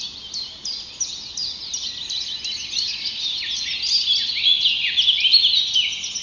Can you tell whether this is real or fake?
real